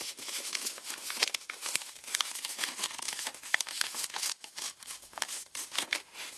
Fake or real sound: fake